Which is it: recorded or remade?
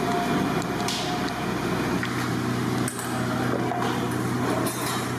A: recorded